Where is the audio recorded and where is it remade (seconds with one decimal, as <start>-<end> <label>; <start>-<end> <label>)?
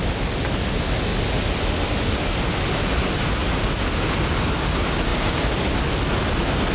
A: 0.0-6.7 recorded